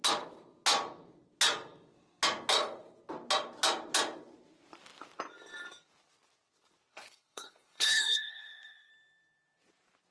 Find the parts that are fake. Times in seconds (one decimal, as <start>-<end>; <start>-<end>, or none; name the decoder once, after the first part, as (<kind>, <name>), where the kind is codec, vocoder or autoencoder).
6.9-8.9 (codec, HILCodec)